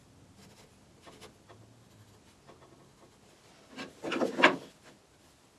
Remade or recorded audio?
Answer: recorded